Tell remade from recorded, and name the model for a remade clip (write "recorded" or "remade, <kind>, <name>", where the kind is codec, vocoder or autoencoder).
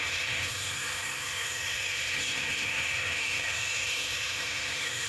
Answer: remade, codec, SNAC